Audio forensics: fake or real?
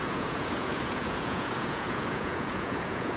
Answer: fake